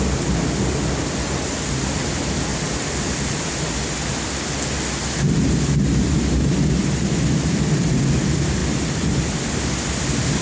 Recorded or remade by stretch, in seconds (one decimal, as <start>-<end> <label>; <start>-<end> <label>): 0.0-10.4 recorded